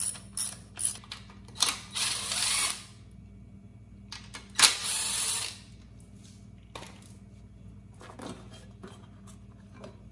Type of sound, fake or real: real